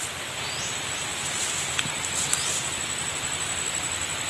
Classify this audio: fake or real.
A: real